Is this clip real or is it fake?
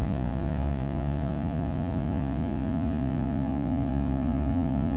fake